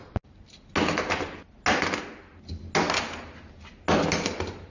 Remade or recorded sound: recorded